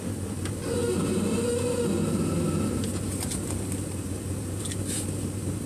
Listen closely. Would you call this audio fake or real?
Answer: real